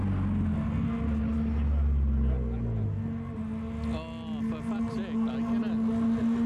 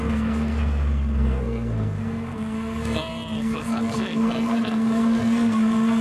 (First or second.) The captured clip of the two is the first